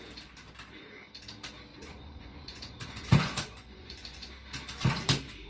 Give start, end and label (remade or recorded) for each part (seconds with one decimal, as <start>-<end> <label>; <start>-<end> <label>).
0.0-1.7 recorded; 1.7-4.3 remade; 4.3-5.5 recorded